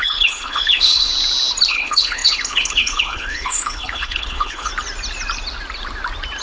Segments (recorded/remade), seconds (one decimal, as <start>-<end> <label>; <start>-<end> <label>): 0.0-1.1 remade; 1.1-1.7 recorded; 1.7-4.7 remade; 4.7-6.4 recorded